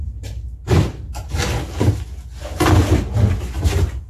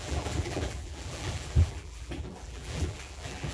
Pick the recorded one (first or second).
first